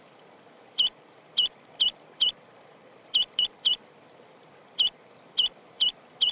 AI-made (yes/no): yes